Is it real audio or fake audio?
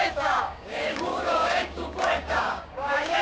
fake